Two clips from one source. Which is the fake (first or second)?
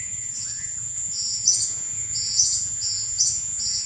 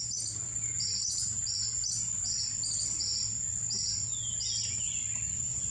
first